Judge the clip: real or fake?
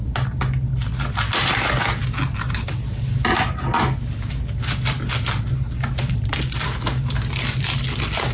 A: real